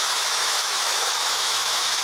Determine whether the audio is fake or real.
fake